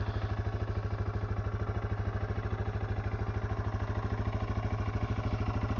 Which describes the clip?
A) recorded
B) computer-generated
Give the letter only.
A